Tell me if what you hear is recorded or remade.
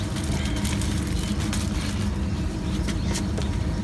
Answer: recorded